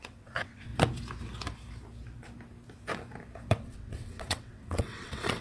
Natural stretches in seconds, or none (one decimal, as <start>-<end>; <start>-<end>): 0.7-3.5